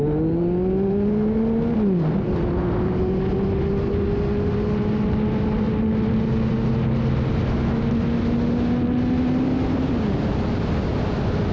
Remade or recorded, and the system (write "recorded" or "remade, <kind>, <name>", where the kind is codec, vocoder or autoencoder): recorded